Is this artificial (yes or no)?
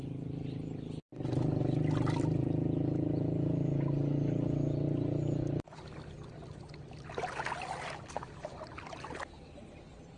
no